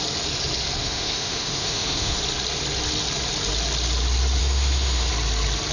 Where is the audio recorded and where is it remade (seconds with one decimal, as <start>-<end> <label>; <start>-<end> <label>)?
0.0-0.8 recorded; 0.8-2.2 remade; 2.2-4.4 recorded; 4.4-5.1 remade; 5.1-5.7 recorded